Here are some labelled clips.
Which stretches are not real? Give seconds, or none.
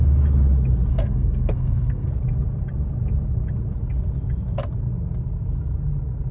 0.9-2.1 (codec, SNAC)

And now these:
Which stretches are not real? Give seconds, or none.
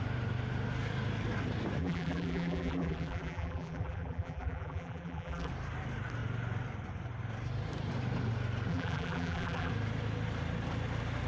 1.8-5.5 (vocoder, BigVGAN v2); 8.7-9.7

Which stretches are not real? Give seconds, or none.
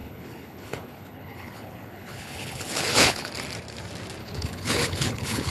0.0-3.3 (codec, HILCodec); 4.2-5.5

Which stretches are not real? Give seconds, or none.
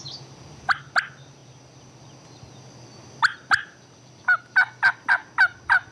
none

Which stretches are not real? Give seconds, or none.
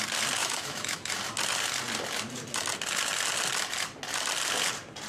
0.4-1.1 (autoencoder, DAC-VAE)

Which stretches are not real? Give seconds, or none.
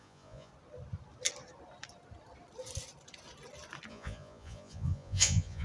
0.0-0.5 (vocoder, Vocos); 3.9-5.6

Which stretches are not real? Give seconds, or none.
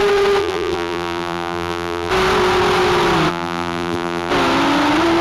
0.4-2.1 (vocoder, BigVGAN v2); 3.3-4.3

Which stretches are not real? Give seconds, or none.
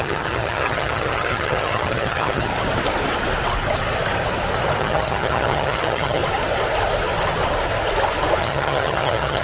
0.0-2.5 (vocoder, HiFi-GAN); 4.8-6.2; 8.4-9.4